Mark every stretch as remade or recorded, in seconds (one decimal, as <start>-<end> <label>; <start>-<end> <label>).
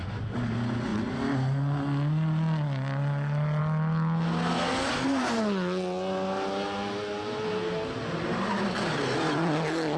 0.0-10.0 recorded